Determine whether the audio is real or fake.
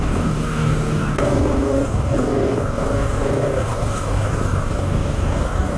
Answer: fake